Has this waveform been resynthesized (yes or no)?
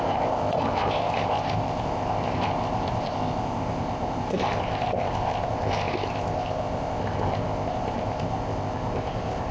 yes